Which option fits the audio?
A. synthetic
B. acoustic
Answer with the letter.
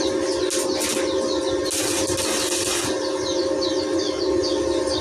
B